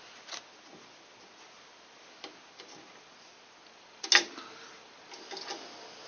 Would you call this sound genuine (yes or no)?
yes